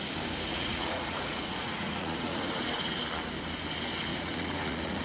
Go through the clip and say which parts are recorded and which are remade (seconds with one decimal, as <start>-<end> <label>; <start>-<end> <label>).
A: 0.0-0.5 recorded; 0.5-3.0 remade; 3.0-4.1 recorded; 4.1-5.0 remade